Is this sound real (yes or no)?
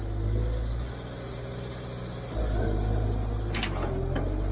yes